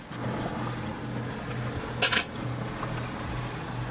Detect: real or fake real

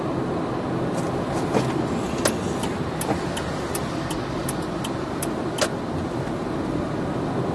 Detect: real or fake real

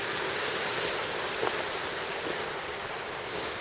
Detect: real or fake real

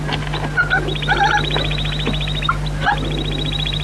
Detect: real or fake real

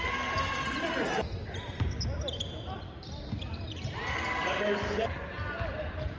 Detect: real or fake real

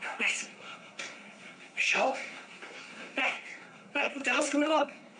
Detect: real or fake fake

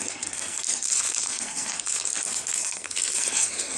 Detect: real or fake fake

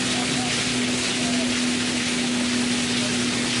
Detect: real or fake real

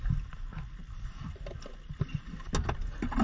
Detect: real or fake real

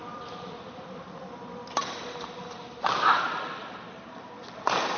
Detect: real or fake real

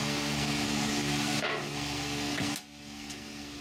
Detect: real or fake fake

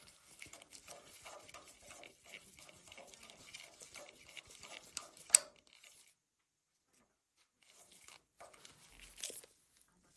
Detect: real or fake real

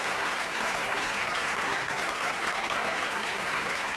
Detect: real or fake fake